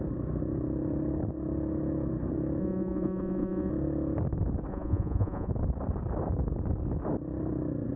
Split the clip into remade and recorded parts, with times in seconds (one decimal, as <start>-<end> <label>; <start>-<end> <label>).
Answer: 0.0-2.6 recorded; 2.6-3.7 remade; 3.7-4.7 recorded; 4.7-5.5 remade; 5.5-8.0 recorded